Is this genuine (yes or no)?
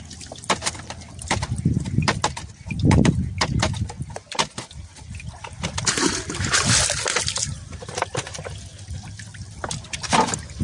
yes